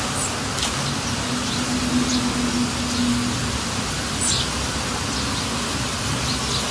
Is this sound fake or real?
real